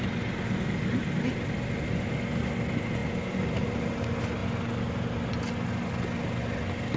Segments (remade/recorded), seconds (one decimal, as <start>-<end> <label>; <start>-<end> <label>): 0.0-7.0 recorded